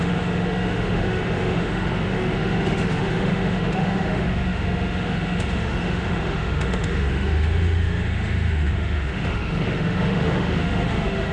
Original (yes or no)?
no